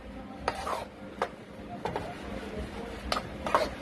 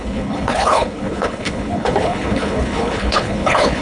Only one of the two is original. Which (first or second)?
first